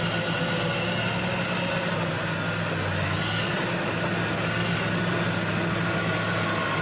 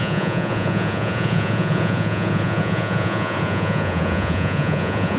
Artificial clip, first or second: second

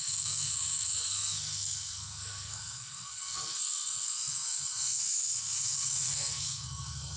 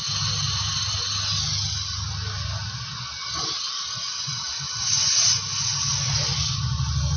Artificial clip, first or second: first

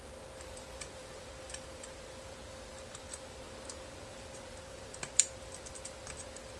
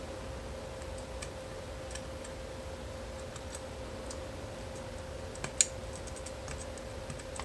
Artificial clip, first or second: first